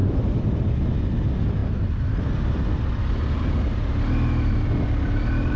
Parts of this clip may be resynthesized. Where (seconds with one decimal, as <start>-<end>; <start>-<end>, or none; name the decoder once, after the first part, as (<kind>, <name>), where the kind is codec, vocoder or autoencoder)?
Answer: none

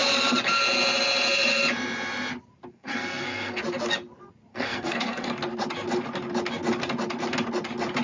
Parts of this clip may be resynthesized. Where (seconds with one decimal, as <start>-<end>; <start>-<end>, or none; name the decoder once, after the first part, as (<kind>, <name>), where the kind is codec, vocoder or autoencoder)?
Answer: 2.7-3.6 (codec, SNAC); 4.5-5.3

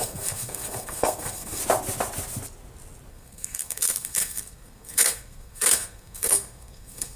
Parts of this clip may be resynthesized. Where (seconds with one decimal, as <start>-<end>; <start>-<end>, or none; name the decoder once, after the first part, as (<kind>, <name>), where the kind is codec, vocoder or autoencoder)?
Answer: 0.0-1.6 (codec, SNAC); 3.1-7.2

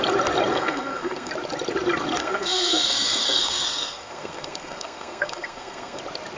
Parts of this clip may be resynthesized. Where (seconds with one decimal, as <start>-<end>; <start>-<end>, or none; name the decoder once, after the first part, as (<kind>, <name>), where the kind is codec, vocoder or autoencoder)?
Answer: 0.5-1.3 (codec, SNAC); 2.2-6.0

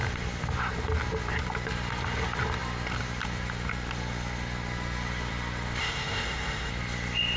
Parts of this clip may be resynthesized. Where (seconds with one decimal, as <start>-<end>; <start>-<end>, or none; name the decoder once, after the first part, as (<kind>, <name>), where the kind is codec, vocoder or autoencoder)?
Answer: 5.8-6.7 (codec, SNAC)